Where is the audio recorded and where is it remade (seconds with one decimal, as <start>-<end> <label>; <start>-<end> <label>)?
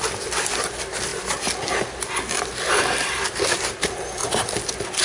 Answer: 0.0-5.0 recorded